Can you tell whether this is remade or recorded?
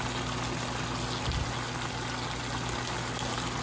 recorded